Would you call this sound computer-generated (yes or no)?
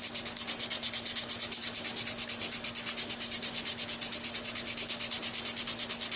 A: no